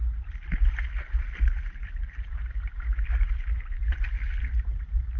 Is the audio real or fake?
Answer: real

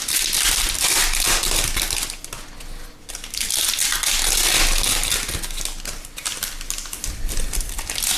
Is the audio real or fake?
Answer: real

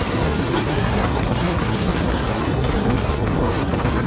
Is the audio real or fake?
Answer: fake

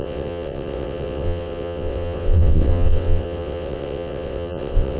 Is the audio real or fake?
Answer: fake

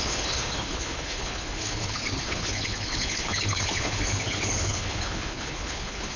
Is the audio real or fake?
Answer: fake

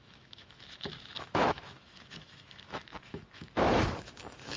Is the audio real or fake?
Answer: fake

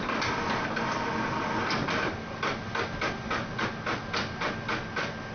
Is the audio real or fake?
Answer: real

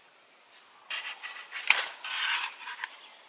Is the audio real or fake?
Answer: real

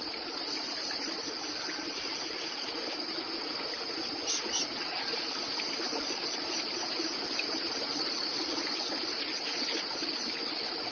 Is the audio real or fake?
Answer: real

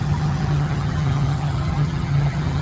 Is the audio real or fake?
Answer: fake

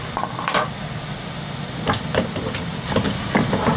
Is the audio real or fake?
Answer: real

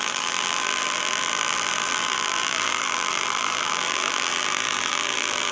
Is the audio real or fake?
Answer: fake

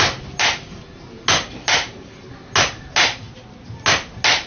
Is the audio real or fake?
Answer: real